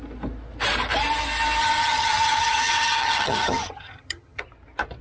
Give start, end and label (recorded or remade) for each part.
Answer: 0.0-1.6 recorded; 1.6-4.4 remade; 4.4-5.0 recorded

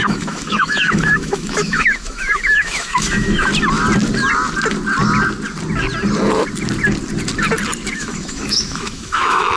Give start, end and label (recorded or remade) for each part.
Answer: 0.0-3.5 remade; 3.5-7.9 recorded; 7.9-9.6 remade

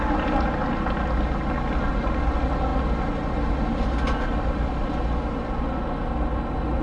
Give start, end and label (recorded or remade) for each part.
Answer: 0.0-6.8 recorded

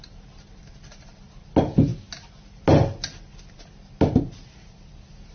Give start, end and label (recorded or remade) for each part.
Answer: 0.0-5.3 recorded

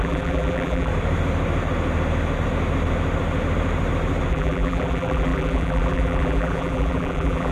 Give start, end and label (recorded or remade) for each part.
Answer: 0.0-0.9 remade; 0.9-4.3 recorded; 4.3-7.5 remade

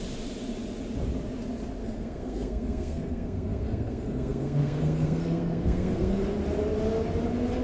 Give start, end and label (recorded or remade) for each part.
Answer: 0.0-1.8 recorded; 1.8-6.2 remade; 6.2-7.6 recorded